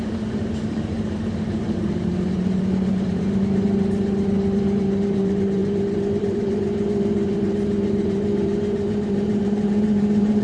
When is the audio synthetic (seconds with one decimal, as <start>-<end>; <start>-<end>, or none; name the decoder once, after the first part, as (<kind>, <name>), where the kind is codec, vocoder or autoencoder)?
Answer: 0.0-10.4 (vocoder, BigVGAN v2)